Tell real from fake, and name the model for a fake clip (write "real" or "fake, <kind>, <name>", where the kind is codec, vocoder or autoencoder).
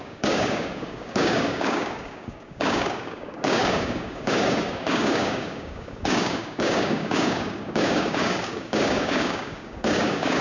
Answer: fake, codec, DAC